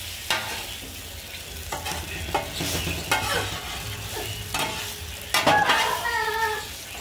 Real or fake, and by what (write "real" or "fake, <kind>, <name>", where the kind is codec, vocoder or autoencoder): real